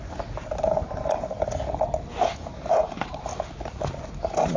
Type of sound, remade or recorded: recorded